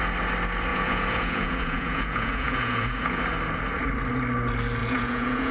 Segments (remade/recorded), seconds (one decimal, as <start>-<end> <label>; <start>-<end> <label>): 0.0-0.7 recorded; 0.7-3.2 remade; 3.2-4.8 recorded; 4.8-5.5 remade